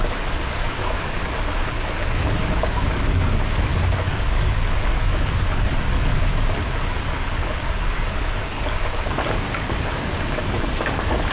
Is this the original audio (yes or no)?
no